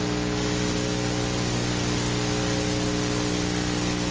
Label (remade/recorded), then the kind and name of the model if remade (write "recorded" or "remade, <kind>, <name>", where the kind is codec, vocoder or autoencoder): recorded